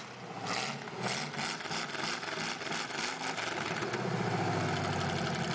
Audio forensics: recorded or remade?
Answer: recorded